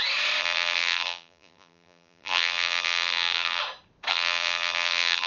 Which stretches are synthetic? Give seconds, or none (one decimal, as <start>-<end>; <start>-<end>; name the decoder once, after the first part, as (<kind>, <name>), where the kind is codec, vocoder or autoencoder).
0.4-3.6 (vocoder, BigVGAN v2); 4.1-5.3